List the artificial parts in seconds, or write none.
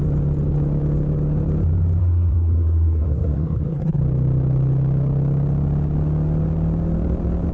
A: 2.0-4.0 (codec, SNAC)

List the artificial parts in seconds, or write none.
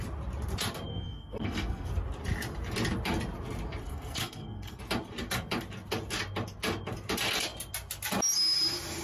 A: 0.9-1.9 (codec, SNAC); 3.8-4.8